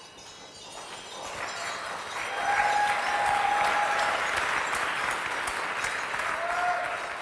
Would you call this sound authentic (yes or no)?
yes